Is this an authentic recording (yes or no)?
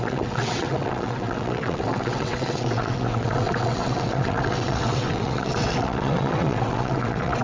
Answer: no